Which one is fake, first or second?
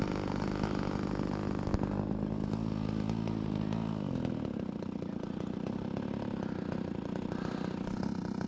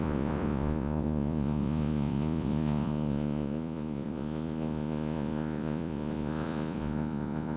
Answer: second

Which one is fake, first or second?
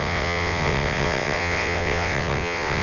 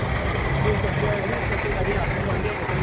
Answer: first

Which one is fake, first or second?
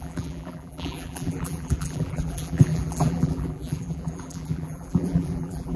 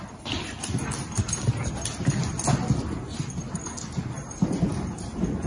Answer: first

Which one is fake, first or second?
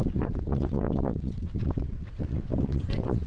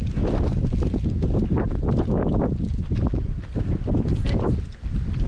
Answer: first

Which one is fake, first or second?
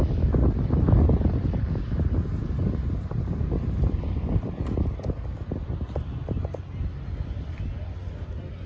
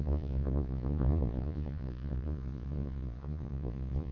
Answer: second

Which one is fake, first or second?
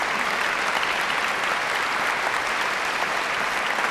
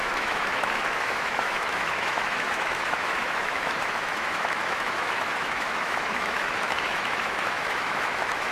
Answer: second